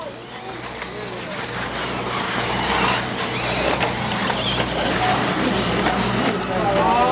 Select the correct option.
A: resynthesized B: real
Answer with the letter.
B